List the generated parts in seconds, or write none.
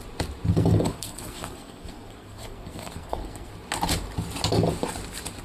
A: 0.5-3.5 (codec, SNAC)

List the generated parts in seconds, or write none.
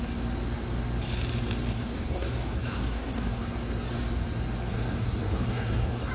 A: 1.7-3.4 (codec, SNAC); 4.7-6.1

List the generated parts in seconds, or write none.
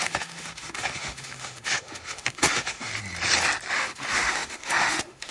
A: 0.0-2.9 (autoencoder, DAC-VAE); 3.7-5.3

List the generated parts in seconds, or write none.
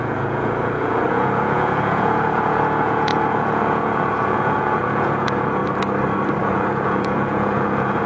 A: 0.0-5.6 (vocoder, Vocos); 6.4-8.1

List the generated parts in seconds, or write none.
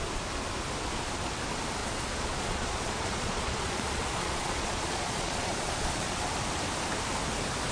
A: 1.8-6.3 (vocoder, Vocos)